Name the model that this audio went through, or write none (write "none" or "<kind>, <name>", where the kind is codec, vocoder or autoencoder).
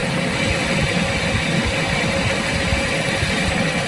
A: none